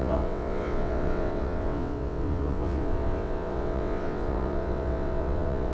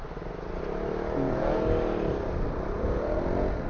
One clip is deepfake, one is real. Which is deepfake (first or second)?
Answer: first